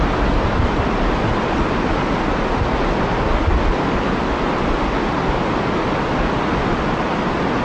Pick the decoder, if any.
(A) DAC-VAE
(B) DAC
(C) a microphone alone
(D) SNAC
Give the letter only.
C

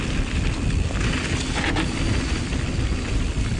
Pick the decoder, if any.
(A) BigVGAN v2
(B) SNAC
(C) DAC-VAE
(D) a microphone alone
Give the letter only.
D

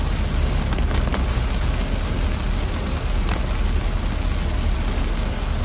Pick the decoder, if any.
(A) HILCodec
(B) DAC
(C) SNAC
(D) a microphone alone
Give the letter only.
D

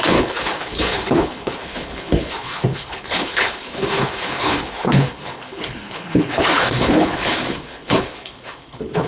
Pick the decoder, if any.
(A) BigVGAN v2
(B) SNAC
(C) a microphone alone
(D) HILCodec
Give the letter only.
D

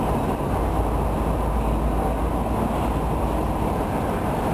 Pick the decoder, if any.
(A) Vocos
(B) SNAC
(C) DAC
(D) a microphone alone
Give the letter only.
D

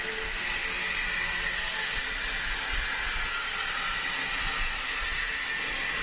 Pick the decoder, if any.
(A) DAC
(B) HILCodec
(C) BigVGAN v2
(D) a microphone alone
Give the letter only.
D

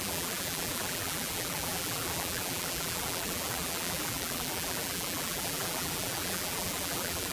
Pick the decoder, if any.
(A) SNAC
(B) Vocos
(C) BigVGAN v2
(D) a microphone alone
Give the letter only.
C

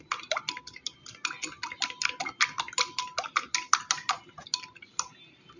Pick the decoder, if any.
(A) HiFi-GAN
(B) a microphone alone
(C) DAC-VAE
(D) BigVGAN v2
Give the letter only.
B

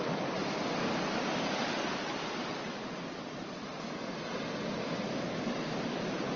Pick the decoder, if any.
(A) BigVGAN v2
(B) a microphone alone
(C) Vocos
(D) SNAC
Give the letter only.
B